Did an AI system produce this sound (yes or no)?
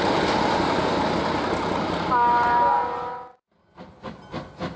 no